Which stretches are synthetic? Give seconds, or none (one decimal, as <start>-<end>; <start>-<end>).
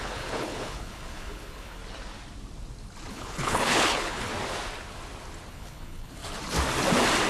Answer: 0.0-1.8; 3.1-4.3; 5.5-6.2